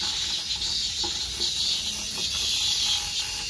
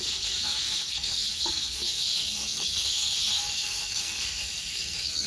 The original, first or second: first